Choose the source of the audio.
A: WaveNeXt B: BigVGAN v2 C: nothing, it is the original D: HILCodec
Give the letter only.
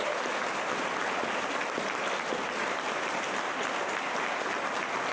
C